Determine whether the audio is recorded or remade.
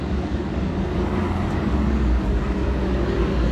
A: remade